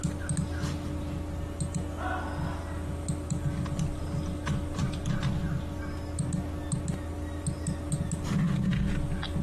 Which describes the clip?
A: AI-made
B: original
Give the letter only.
B